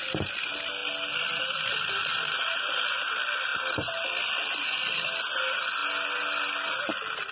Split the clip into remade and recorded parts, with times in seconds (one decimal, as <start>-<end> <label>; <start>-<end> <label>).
0.0-7.3 recorded